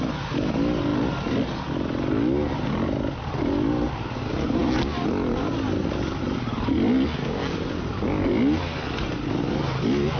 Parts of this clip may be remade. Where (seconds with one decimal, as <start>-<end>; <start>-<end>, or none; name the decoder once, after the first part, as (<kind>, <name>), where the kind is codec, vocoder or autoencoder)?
none